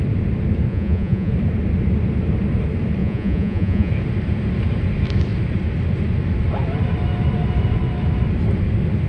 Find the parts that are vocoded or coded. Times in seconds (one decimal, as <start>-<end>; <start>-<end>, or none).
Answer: 0.7-1.3; 3.0-3.9